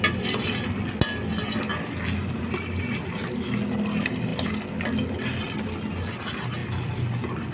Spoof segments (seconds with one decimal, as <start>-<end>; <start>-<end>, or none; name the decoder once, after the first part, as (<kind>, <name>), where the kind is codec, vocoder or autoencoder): none